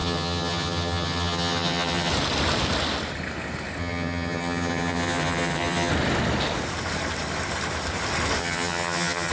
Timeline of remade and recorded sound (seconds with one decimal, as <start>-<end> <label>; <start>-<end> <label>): 0.0-2.1 remade; 2.1-3.8 recorded; 3.8-5.9 remade; 5.9-8.4 recorded; 8.4-9.3 remade